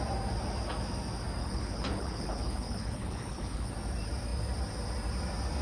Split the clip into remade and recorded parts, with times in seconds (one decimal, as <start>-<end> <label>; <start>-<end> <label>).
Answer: 0.0-1.4 recorded; 1.4-3.7 remade; 3.7-5.6 recorded